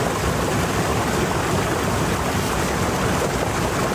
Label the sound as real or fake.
real